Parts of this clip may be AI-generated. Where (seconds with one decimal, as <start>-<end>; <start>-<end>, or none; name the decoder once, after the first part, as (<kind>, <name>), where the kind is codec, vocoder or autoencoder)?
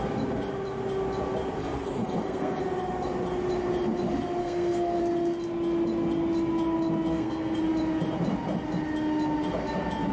1.6-2.6 (codec, SNAC); 4.4-5.0; 7.1-7.6